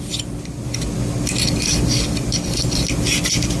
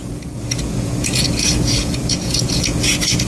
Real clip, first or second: first